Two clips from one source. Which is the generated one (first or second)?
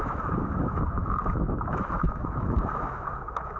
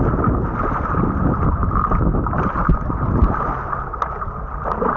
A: first